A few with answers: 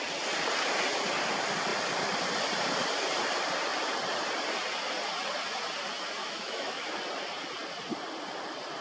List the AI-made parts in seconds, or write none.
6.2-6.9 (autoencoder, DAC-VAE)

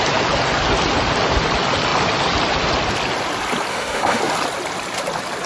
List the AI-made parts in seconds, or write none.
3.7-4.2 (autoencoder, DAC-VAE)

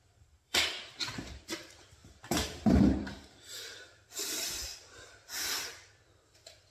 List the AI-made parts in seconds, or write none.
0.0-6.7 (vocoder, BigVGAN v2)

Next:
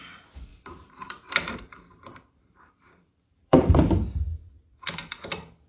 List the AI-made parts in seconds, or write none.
0.5-3.9 (vocoder, BigVGAN v2)

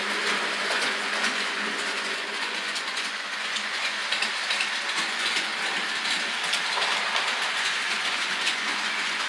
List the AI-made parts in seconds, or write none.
0.0-4.0 (vocoder, Vocos); 4.9-5.5; 7.5-9.3

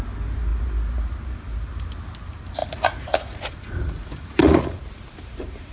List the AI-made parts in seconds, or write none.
2.6-4.8 (vocoder, Vocos)

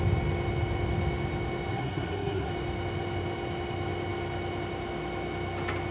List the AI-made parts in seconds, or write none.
1.7-2.5 (codec, SNAC)

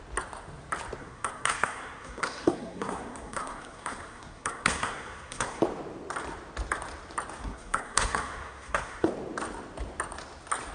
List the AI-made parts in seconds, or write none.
1.0-5.6 (codec, SNAC); 7.4-9.1